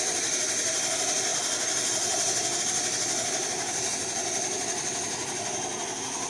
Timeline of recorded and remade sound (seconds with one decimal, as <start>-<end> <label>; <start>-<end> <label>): 0.0-6.3 recorded